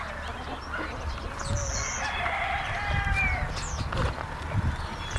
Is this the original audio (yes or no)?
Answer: yes